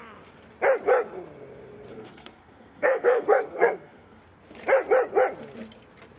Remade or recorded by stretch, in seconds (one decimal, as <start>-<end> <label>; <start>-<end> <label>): 0.0-1.9 recorded; 1.9-4.2 remade; 4.2-6.2 recorded